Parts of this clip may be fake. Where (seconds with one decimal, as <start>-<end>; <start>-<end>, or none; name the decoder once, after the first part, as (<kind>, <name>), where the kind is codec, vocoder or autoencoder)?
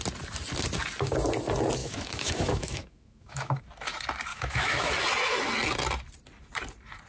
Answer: 1.8-3.6 (autoencoder, DAC-VAE); 4.3-4.9